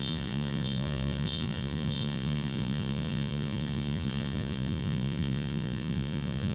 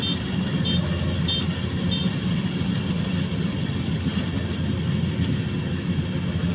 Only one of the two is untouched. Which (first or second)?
second